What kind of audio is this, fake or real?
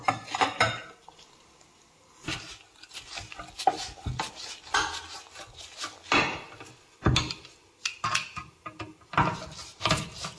real